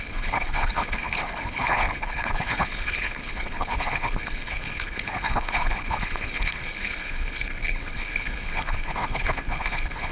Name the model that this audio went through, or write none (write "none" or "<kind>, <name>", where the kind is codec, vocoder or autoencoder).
codec, HILCodec